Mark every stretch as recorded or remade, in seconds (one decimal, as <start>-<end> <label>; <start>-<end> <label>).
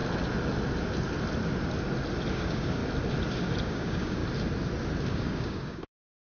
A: 0.0-2.3 recorded; 2.3-2.8 remade; 2.8-3.6 recorded; 3.6-4.2 remade; 4.2-5.1 recorded; 5.1-6.2 remade